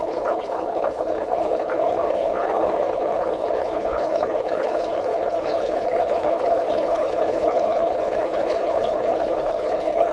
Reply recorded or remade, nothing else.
remade